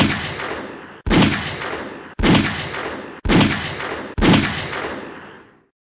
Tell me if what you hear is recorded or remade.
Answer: recorded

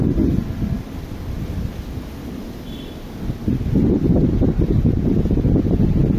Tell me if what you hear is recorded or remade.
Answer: recorded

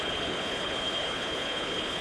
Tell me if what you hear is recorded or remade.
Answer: remade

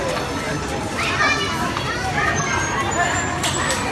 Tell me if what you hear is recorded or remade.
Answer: recorded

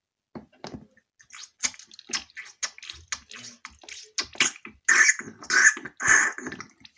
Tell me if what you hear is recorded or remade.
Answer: recorded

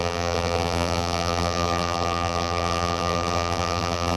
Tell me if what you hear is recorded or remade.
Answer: remade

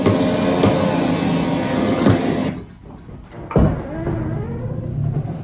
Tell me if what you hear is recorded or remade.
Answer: recorded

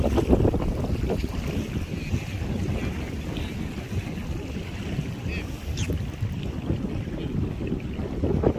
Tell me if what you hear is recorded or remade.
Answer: recorded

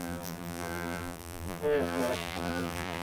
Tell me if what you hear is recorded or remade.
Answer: remade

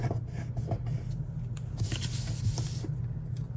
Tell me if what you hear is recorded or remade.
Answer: recorded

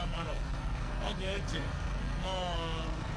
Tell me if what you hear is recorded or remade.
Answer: remade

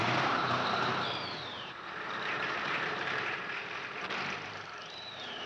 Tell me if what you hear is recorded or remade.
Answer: remade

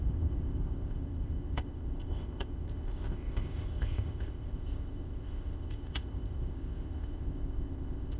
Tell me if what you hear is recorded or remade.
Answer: remade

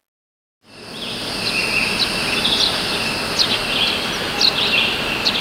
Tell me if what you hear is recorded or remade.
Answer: recorded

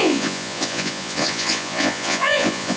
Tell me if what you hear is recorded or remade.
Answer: remade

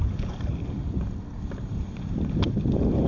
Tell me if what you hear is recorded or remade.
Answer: recorded